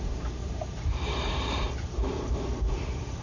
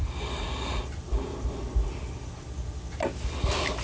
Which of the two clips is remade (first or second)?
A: first